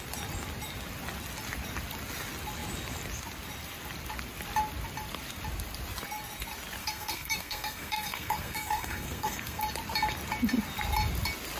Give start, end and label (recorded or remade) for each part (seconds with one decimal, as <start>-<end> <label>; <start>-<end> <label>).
0.0-6.8 recorded; 6.8-9.6 remade; 9.6-11.6 recorded